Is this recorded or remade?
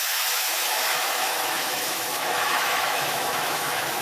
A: remade